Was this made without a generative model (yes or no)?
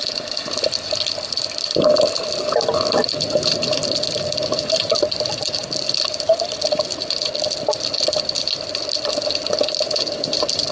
yes